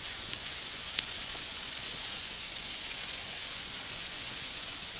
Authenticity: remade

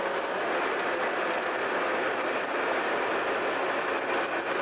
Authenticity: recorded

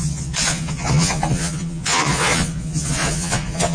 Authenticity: remade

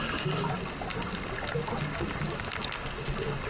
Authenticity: recorded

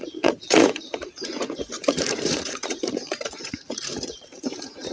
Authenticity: remade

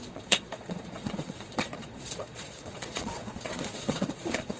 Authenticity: remade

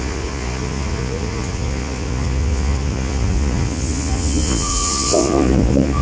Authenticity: remade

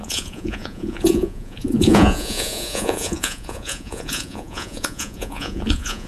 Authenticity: remade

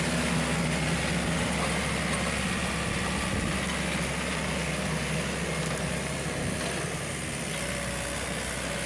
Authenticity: recorded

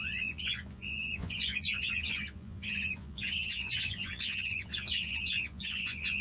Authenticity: remade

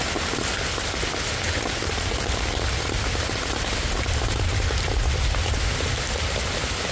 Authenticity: recorded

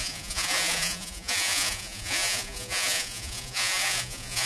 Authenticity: remade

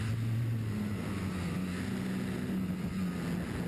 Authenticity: recorded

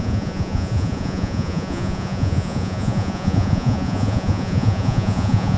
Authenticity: remade